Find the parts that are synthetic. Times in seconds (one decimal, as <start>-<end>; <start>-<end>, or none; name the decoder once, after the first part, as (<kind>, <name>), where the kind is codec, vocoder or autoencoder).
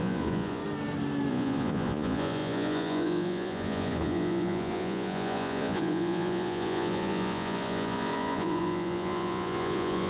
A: 0.0-0.6 (vocoder, Vocos); 1.3-10.1